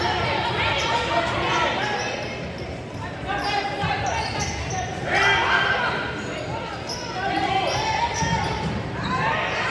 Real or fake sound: real